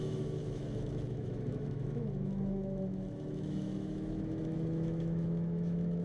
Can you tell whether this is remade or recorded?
remade